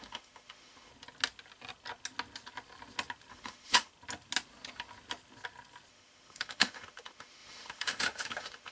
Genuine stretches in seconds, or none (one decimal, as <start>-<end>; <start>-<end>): 0.9-3.3; 3.9-5.9